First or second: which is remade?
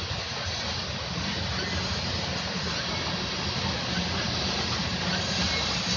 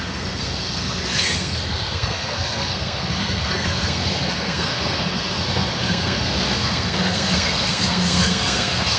second